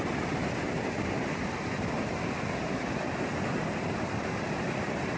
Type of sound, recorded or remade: recorded